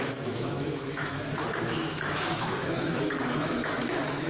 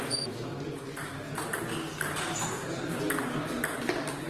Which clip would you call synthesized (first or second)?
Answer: first